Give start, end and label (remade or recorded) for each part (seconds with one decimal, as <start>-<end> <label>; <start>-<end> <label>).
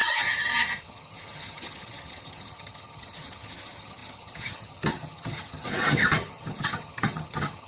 0.0-7.7 remade